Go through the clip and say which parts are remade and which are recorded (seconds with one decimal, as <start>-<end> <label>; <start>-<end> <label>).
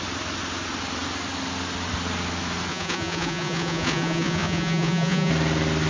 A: 0.0-2.7 recorded; 2.7-5.3 remade; 5.3-5.9 recorded